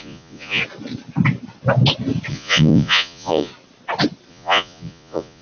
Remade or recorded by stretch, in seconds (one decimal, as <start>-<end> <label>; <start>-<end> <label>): 0.0-0.6 remade; 0.6-2.3 recorded; 2.3-3.5 remade; 3.5-4.3 recorded; 4.3-5.4 remade